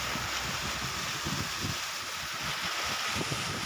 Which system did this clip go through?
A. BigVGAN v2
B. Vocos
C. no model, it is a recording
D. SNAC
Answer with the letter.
C